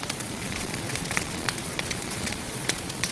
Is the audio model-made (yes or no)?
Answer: yes